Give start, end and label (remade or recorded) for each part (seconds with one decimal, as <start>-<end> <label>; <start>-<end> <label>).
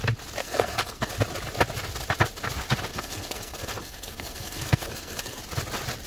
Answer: 0.0-0.4 recorded; 0.4-1.1 remade; 1.1-2.9 recorded; 2.9-5.4 remade; 5.4-6.1 recorded